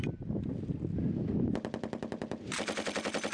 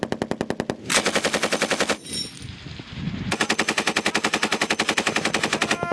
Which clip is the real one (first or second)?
second